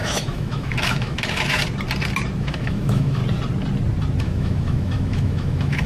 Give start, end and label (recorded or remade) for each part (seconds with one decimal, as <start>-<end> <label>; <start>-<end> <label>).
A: 0.0-1.6 remade; 1.6-2.4 recorded; 2.4-3.2 remade; 3.2-4.2 recorded; 4.2-5.9 remade